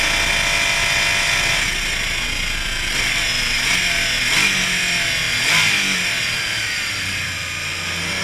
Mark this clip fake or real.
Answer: real